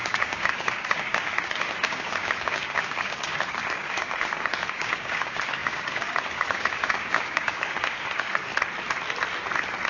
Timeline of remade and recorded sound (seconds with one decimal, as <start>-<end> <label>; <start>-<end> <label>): 0.0-8.5 remade; 8.5-9.9 recorded